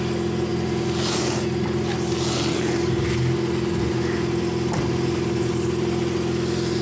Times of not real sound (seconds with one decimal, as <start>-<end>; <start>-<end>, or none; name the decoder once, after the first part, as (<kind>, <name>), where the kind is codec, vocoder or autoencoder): none